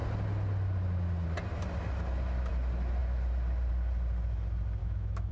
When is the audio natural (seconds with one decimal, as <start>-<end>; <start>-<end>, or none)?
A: 0.0-4.8